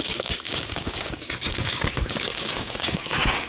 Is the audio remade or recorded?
remade